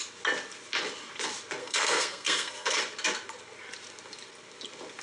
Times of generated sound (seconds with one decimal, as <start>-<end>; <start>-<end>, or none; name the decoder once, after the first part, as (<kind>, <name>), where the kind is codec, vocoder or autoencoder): 1.6-2.8 (codec, SNAC)

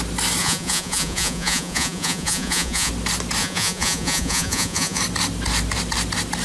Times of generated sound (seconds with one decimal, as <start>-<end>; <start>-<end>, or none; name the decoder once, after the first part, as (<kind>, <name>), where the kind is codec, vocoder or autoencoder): 0.4-2.9 (vocoder, Vocos); 3.4-5.0

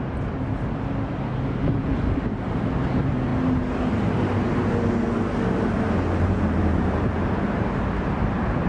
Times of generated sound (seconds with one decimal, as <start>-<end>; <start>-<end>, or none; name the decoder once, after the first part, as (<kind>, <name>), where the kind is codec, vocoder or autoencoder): 0.0-3.3 (vocoder, BigVGAN v2); 6.0-8.7

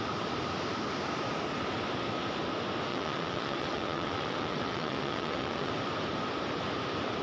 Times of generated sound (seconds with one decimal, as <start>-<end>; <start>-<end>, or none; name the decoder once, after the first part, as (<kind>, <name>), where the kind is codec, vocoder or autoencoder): 2.9-5.7 (vocoder, WaveNeXt)

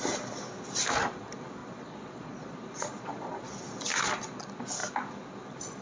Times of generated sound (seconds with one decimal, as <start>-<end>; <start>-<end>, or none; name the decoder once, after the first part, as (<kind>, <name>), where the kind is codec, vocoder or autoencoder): 1.6-3.4 (vocoder, Vocos)